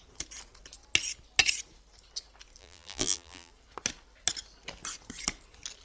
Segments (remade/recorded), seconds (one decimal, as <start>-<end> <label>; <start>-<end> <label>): 0.0-2.6 recorded; 2.6-3.5 remade; 3.5-5.8 recorded